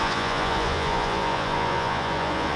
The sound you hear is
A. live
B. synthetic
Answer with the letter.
B